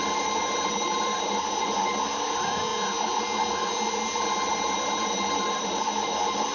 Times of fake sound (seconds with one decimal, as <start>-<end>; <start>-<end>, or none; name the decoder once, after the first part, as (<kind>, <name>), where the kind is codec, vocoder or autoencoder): none